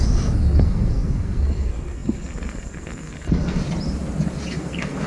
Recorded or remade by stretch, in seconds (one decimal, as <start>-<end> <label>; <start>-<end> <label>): 0.0-3.6 remade; 3.6-4.5 recorded; 4.5-5.1 remade